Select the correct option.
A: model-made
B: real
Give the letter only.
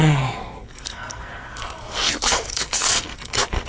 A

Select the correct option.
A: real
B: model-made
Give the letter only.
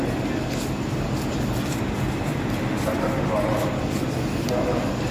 A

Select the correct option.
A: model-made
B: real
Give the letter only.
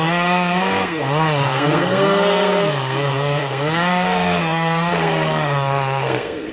A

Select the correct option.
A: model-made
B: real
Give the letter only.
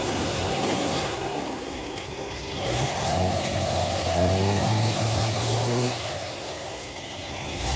A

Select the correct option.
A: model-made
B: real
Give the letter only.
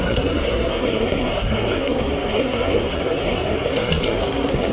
A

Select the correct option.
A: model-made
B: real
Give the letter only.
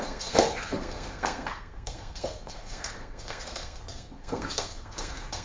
A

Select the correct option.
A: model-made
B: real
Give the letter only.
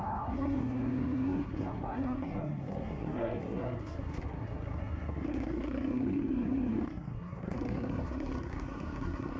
A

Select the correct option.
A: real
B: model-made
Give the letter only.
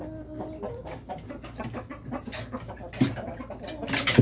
A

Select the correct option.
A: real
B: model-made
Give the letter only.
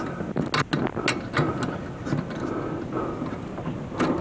A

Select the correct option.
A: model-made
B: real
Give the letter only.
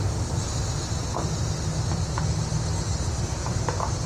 B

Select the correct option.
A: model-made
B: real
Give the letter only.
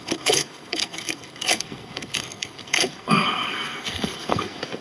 A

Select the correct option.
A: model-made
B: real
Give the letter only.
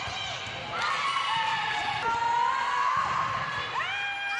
B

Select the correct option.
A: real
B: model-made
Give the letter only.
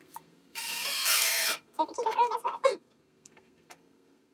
B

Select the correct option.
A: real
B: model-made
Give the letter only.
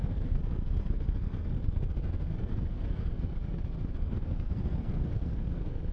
B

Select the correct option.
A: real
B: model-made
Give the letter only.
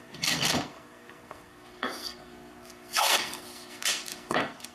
B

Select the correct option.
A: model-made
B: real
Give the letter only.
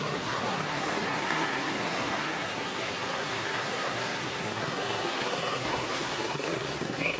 A